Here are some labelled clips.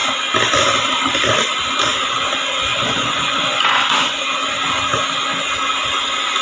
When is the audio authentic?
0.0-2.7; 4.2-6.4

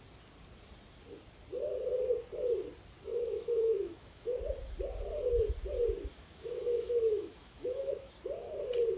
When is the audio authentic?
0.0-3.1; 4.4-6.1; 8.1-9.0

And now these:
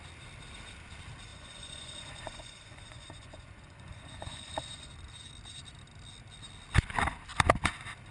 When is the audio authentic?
0.0-1.3; 4.9-8.1